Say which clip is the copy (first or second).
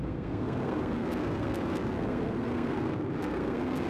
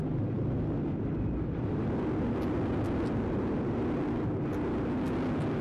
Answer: first